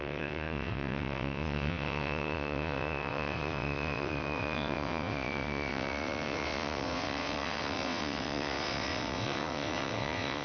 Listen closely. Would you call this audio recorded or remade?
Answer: remade